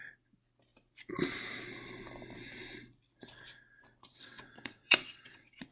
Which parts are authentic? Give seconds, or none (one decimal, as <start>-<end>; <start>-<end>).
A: 0.0-4.0